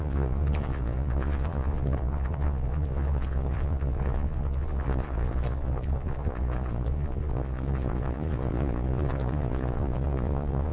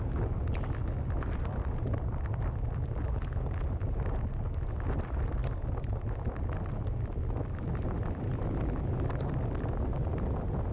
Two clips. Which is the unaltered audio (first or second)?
second